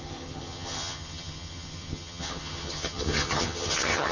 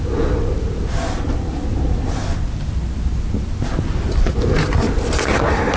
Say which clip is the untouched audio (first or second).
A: second